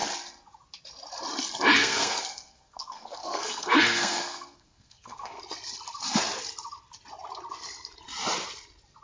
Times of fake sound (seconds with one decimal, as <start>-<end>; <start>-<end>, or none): 1.8-5.4